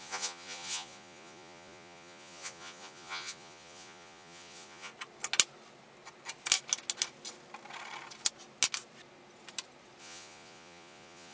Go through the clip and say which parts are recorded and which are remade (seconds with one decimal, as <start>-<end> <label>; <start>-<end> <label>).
0.0-4.9 remade; 4.9-10.0 recorded; 10.0-11.3 remade